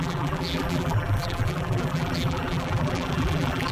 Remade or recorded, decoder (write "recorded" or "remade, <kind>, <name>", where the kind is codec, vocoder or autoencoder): remade, vocoder, BigVGAN v2